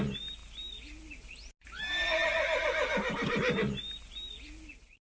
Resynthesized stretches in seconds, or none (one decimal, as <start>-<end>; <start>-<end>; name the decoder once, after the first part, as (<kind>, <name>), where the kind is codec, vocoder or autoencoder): none